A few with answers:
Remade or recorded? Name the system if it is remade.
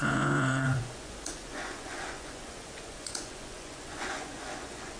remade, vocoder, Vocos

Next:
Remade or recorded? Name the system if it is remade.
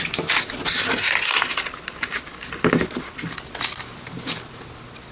recorded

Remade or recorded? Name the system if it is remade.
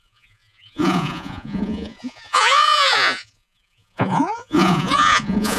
remade, vocoder, Vocos